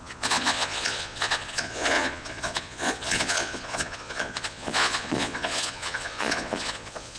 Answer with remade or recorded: remade